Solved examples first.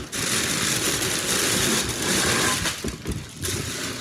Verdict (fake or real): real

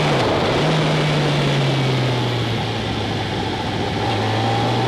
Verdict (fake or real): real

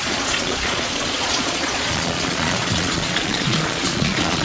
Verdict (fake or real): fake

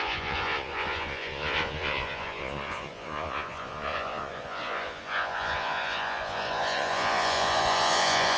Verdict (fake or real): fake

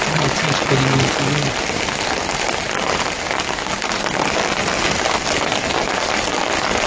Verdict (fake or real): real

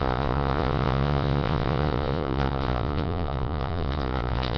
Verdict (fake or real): fake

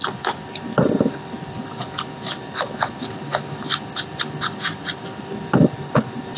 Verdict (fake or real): real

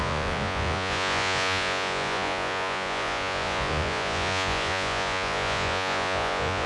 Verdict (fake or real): fake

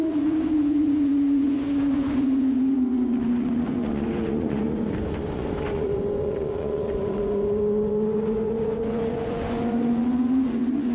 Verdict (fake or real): fake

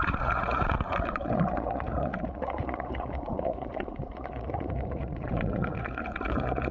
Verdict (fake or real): fake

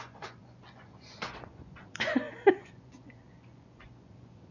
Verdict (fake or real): fake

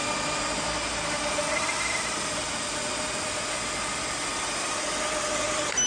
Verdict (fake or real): real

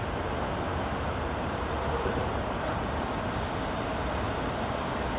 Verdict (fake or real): real